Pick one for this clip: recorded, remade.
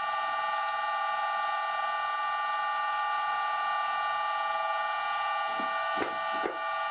recorded